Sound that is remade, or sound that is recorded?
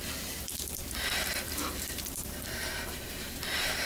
remade